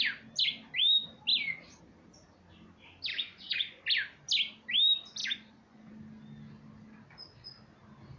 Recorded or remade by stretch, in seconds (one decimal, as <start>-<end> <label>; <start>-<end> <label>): 0.0-3.1 recorded; 3.1-3.8 remade; 3.8-5.2 recorded; 5.2-5.9 remade; 5.9-8.2 recorded